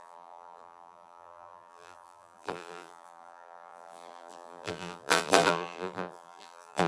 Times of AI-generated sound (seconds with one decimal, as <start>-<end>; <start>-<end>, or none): 0.0-6.9